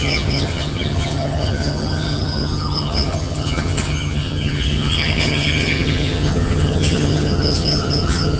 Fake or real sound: fake